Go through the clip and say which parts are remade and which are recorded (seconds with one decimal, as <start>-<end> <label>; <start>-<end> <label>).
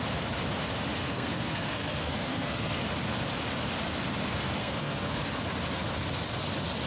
0.0-1.0 recorded; 1.0-2.8 remade; 2.8-4.6 recorded; 4.6-5.2 remade; 5.2-6.9 recorded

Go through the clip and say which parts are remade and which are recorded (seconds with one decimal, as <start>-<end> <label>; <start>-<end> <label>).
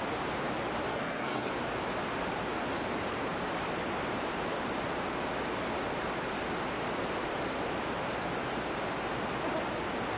0.0-0.9 recorded; 0.9-1.5 remade; 1.5-10.2 recorded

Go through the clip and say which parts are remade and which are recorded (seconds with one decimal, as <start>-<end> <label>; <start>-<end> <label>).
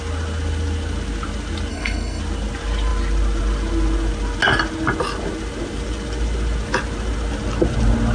0.0-1.7 recorded; 1.7-2.2 remade; 2.2-8.1 recorded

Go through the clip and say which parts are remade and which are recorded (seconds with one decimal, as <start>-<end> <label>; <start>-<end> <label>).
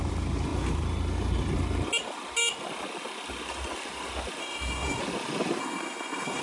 0.0-4.4 recorded; 4.4-5.0 remade; 5.0-5.6 recorded; 5.6-6.4 remade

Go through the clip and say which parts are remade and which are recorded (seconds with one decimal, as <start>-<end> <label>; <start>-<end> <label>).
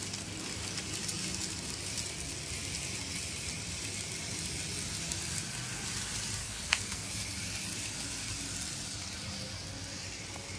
0.0-6.4 recorded; 6.4-7.1 remade; 7.1-10.6 recorded